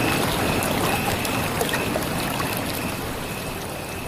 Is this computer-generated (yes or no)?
no